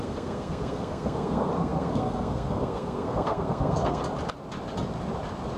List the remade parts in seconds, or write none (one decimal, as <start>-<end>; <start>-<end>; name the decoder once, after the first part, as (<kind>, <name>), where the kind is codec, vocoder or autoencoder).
0.0-4.0 (codec, SNAC)